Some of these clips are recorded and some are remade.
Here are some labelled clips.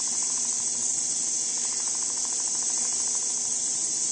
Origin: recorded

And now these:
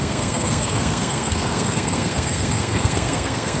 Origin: remade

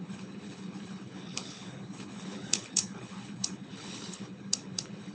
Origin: remade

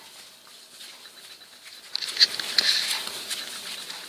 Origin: recorded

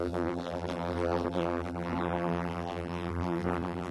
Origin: remade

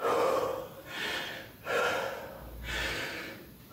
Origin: recorded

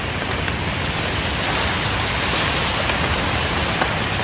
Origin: recorded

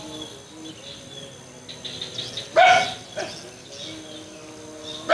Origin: recorded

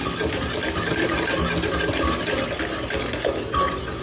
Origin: recorded